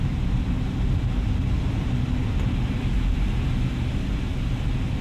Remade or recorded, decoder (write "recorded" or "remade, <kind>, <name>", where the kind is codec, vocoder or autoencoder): recorded